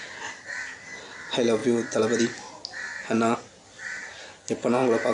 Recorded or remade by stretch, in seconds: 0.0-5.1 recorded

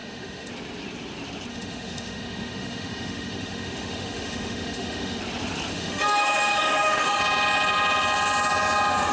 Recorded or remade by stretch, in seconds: 0.0-0.5 remade; 0.5-1.5 recorded; 1.5-5.2 remade; 5.2-5.7 recorded; 5.7-7.2 remade; 7.2-9.1 recorded

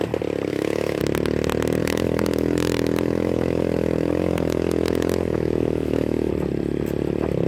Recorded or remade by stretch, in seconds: 0.0-0.5 recorded; 0.5-1.0 remade; 1.0-1.8 recorded; 1.8-6.3 remade; 6.3-7.5 recorded